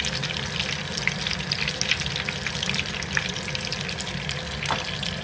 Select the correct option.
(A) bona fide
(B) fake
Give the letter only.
A